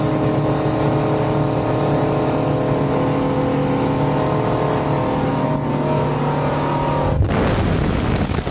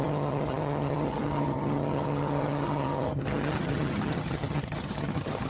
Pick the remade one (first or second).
second